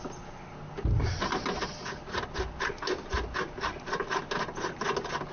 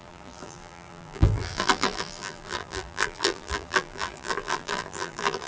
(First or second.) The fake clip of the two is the second